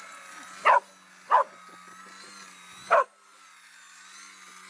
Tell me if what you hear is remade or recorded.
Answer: recorded